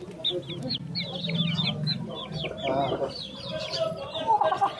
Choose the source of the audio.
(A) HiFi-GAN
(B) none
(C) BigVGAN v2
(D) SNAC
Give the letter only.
B